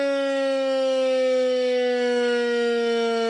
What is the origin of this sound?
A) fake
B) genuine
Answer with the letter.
A